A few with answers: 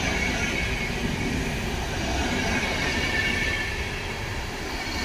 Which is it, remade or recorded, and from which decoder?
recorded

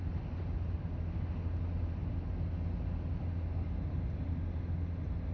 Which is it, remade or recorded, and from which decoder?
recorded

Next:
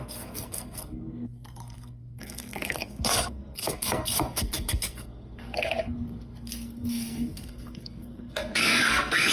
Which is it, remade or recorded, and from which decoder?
remade, codec, SNAC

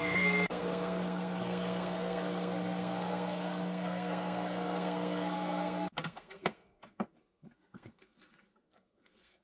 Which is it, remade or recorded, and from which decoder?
remade, codec, SNAC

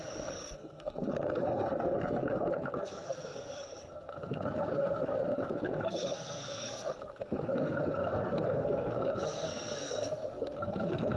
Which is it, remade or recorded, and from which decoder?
remade, codec, SNAC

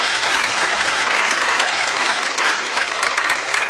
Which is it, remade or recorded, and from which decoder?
remade, codec, SNAC